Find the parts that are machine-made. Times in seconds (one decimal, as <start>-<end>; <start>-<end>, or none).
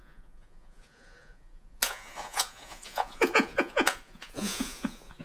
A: 0.0-5.2